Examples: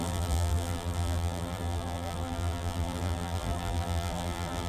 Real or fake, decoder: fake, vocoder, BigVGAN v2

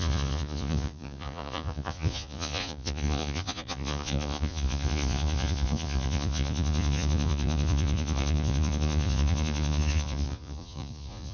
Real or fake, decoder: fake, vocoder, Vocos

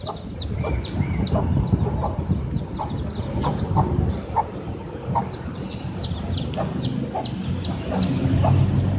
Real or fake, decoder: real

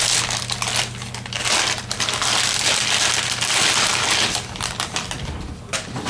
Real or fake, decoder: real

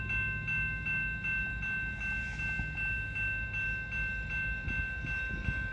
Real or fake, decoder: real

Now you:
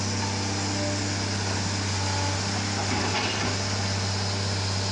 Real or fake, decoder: real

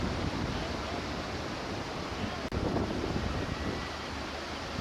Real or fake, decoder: real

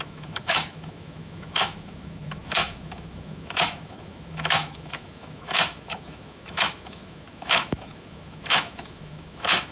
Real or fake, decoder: fake, autoencoder, DAC-VAE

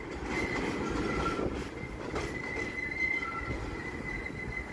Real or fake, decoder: real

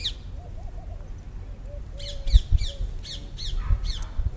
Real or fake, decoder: real